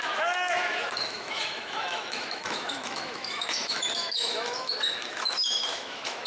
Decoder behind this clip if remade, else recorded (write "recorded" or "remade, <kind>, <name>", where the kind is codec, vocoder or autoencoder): remade, autoencoder, DAC-VAE